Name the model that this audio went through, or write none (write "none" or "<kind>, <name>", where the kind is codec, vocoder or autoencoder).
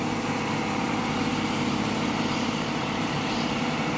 vocoder, BigVGAN v2